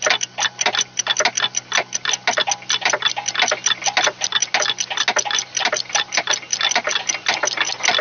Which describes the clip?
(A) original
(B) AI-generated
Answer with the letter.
A